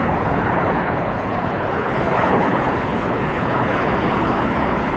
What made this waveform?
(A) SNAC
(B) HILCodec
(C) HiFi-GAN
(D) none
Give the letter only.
B